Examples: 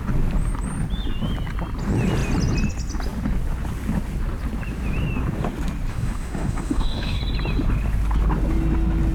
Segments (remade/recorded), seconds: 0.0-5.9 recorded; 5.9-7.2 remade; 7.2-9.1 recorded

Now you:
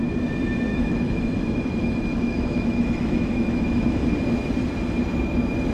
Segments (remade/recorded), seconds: 0.0-0.7 recorded; 0.7-4.1 remade; 4.1-5.7 recorded